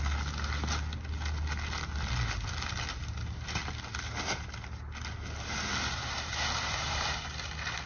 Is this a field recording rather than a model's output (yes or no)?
yes